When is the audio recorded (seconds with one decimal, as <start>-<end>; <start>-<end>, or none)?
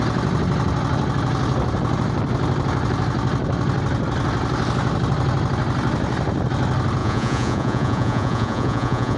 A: 0.0-7.0